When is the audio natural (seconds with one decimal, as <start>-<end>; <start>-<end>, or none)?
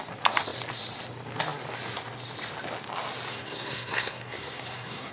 0.0-3.3